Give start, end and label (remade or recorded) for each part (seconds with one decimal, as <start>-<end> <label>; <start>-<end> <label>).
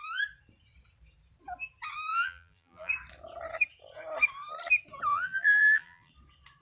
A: 0.0-2.1 recorded; 2.1-2.9 remade; 2.9-5.1 recorded; 5.1-6.1 remade; 6.1-6.6 recorded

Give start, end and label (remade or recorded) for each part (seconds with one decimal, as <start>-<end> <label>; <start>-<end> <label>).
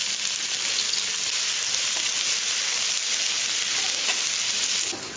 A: 0.0-2.6 remade; 2.6-5.2 recorded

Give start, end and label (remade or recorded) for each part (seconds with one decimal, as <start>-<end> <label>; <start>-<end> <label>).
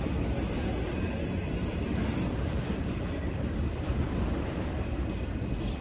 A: 0.0-1.6 recorded; 1.6-5.1 remade; 5.1-5.8 recorded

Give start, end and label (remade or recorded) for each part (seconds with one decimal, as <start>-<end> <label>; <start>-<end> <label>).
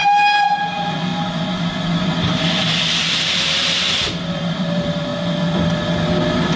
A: 0.0-0.6 recorded; 0.6-1.1 remade; 1.1-3.1 recorded; 3.1-5.1 remade; 5.1-6.6 recorded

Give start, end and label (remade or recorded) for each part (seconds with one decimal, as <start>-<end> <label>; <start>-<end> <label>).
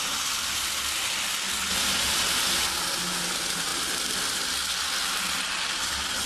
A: 0.0-6.3 recorded